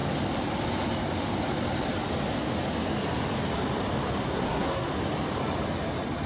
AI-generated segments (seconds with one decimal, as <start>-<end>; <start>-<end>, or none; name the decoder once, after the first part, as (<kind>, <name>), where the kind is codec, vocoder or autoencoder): 4.2-4.9 (codec, SNAC)